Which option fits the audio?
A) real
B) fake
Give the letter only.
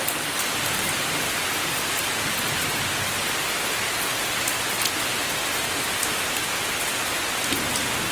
A